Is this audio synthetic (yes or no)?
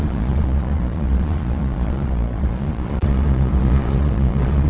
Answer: yes